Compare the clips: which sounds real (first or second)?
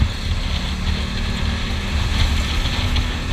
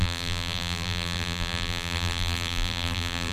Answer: first